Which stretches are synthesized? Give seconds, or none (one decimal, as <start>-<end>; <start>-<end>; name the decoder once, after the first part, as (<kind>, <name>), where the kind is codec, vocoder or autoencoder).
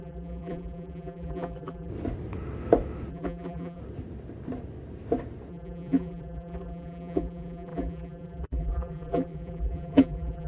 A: 0.0-1.9 (vocoder, BigVGAN v2); 3.1-3.8; 5.5-10.5